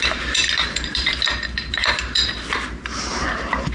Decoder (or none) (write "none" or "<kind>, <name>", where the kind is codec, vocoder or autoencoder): vocoder, BigVGAN v2